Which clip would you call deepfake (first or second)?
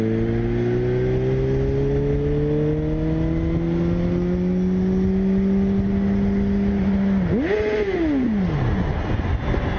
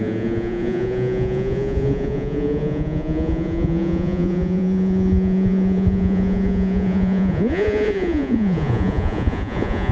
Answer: second